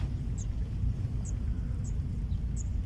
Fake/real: real